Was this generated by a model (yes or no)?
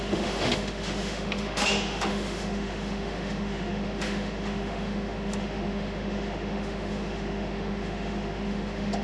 yes